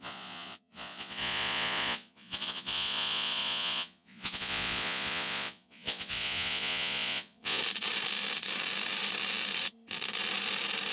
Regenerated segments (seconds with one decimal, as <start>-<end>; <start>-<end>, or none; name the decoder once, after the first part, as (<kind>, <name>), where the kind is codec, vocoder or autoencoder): 0.0-7.6 (vocoder, Vocos)